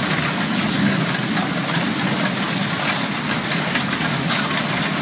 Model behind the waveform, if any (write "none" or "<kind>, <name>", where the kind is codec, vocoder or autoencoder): none